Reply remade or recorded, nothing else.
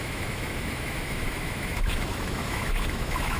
remade